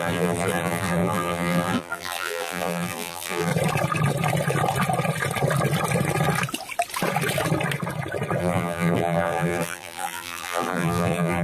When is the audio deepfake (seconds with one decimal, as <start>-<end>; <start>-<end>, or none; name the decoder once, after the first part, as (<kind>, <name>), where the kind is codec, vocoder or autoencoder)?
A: 0.0-3.5 (vocoder, BigVGAN v2); 8.4-11.4